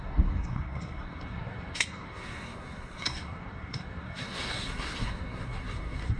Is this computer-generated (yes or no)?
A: yes